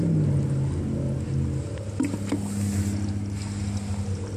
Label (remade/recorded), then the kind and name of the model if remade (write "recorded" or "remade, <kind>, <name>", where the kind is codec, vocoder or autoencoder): recorded